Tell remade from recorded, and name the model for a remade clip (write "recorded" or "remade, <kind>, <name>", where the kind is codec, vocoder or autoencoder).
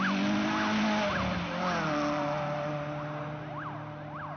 recorded